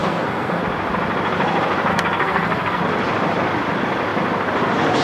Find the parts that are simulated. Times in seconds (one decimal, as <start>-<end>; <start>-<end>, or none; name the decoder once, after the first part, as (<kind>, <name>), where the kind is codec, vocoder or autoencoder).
0.0-0.6 (codec, SNAC); 1.9-2.8

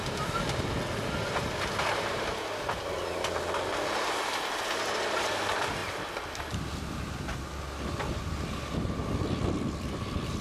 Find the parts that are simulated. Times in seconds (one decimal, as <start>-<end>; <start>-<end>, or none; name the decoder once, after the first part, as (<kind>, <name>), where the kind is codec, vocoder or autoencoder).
none

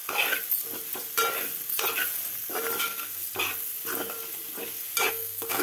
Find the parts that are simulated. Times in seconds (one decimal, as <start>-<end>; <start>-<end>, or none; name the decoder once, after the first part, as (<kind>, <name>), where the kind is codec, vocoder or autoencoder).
2.8-3.2 (codec, SNAC); 5.1-5.6

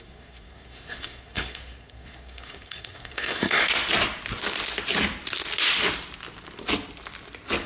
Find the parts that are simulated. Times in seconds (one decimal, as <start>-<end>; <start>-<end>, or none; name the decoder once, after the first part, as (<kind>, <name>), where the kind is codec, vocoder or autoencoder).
0.0-3.6 (codec, SNAC)

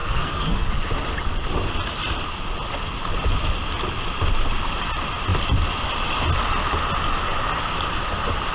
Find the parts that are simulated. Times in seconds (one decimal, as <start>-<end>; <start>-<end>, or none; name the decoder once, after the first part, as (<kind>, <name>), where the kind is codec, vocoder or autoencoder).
0.0-0.7 (codec, SNAC)

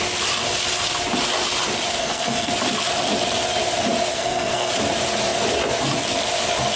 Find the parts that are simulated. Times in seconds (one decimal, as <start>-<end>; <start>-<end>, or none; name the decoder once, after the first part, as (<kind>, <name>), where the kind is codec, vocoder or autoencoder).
2.0-2.5 (codec, SNAC); 4.1-4.7